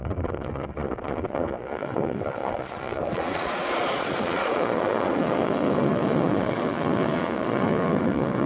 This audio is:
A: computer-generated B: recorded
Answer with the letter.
A